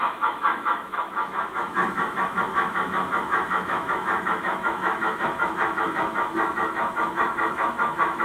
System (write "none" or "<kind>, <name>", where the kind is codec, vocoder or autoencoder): autoencoder, DAC-VAE